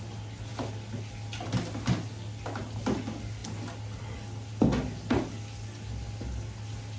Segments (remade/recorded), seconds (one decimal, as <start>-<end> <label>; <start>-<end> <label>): 0.0-7.0 recorded